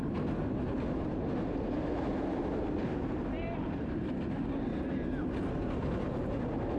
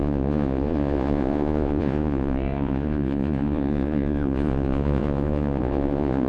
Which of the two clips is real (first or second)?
first